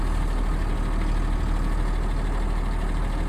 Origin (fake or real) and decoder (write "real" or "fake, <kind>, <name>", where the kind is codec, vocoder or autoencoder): real